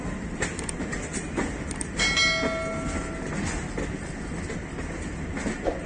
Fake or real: real